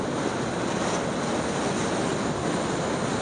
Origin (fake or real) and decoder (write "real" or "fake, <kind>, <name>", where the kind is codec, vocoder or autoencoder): real